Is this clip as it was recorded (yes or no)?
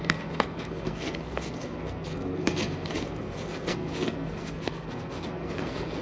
no